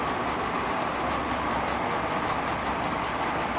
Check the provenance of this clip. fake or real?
real